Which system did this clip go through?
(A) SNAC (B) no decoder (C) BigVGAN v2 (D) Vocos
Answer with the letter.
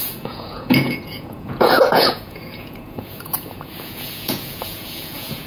D